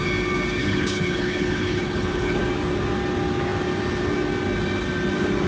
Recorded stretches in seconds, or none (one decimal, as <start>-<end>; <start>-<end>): 0.0-0.6; 2.4-5.5